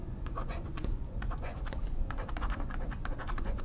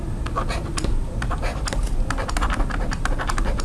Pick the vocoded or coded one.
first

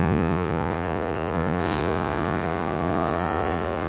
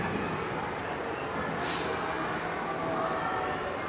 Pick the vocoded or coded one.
first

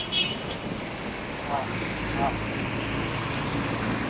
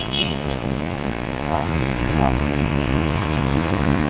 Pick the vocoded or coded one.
second